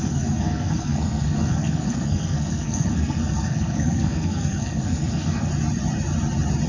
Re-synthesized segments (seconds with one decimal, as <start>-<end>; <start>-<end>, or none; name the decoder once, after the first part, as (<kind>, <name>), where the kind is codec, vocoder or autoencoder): 0.0-5.5 (codec, SNAC)